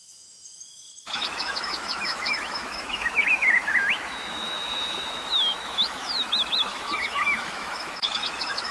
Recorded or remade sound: remade